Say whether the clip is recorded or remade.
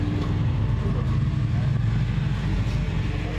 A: recorded